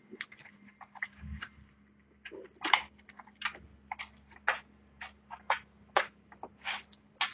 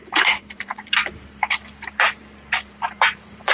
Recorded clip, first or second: first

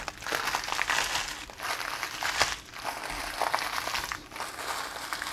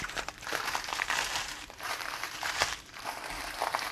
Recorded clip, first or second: first